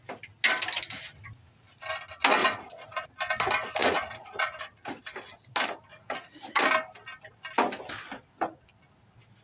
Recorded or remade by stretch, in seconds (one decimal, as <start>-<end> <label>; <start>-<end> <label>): 0.0-2.4 recorded; 2.4-3.1 remade; 3.1-3.8 recorded; 3.8-5.0 remade; 5.0-5.9 recorded; 5.9-6.6 remade; 6.6-9.4 recorded